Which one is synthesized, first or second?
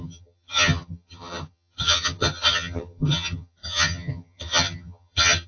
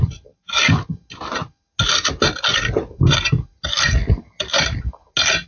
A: first